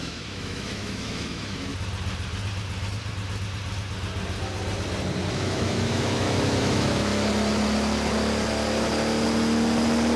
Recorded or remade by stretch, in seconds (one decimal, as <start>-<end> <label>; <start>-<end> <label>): 0.0-1.7 remade; 1.7-5.3 recorded; 5.3-7.1 remade; 7.1-10.2 recorded

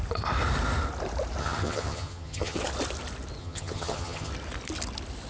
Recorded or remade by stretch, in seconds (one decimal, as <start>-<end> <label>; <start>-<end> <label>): 0.0-1.4 recorded; 1.4-2.6 remade; 2.6-3.4 recorded; 3.4-4.3 remade; 4.3-5.3 recorded

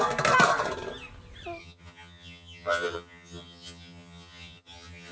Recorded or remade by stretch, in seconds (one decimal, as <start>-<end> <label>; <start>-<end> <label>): 0.0-1.6 recorded; 1.6-5.1 remade